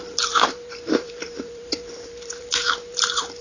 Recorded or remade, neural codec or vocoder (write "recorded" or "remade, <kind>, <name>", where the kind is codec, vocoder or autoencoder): remade, vocoder, BigVGAN v2